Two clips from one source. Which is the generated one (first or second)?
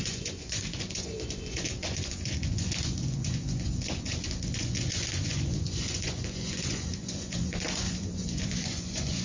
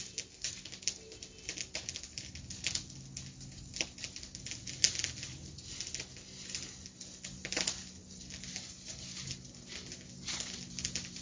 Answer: first